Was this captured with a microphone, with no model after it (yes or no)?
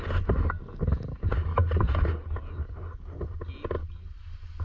yes